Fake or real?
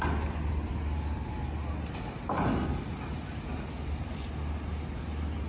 real